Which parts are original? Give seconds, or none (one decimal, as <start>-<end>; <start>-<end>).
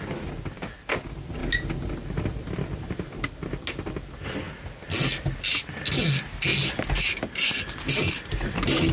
0.0-8.9